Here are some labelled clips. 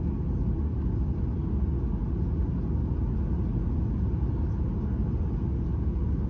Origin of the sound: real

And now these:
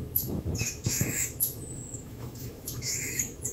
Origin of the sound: fake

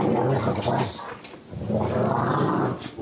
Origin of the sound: real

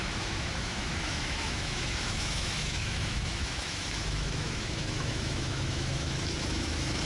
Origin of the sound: fake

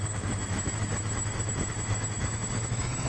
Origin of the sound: fake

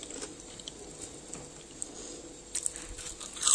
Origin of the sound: real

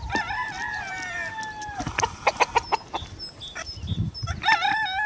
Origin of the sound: real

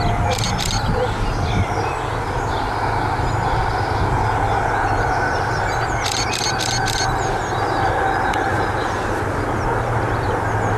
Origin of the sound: real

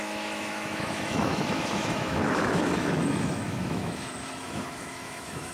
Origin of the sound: fake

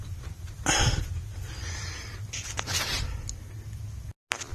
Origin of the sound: real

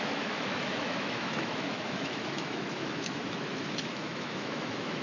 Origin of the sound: fake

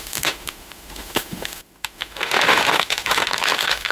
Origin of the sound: fake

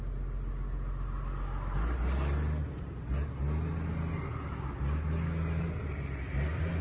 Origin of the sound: real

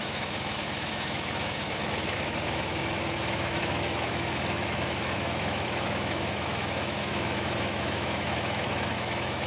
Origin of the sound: fake